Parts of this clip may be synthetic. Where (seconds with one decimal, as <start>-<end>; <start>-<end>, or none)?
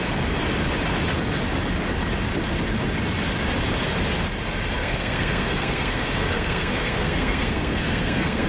4.8-8.5